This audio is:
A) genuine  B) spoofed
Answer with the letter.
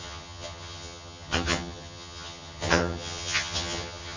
B